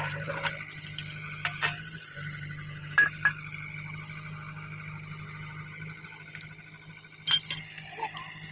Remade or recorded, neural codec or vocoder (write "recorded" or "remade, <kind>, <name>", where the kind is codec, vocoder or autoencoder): recorded